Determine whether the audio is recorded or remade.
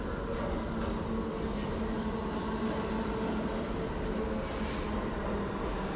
recorded